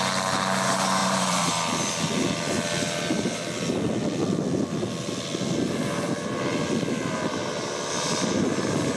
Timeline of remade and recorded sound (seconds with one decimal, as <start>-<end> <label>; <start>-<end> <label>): 0.0-1.0 recorded; 1.0-1.5 remade; 1.5-9.0 recorded